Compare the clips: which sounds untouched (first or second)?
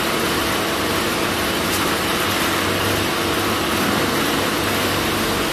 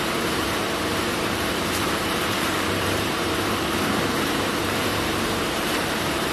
first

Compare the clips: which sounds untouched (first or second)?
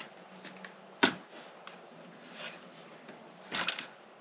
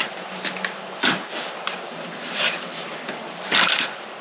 first